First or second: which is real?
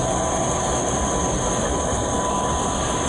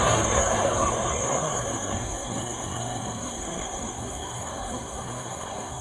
first